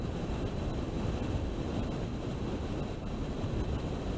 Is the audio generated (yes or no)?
no